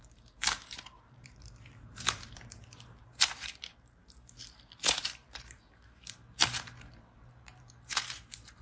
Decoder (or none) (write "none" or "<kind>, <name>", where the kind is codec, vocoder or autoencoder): vocoder, BigVGAN v2